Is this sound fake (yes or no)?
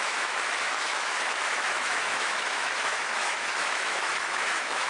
yes